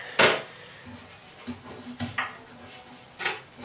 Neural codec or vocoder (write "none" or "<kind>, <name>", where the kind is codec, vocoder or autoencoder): none